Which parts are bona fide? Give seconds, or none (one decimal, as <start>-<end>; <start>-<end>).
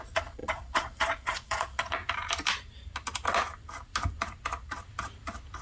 2.0-5.6